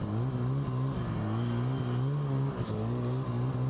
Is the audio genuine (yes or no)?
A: yes